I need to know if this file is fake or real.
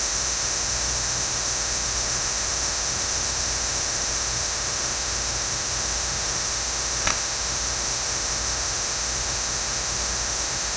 fake